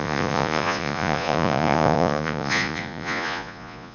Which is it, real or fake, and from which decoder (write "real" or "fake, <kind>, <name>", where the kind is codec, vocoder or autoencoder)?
fake, vocoder, Vocos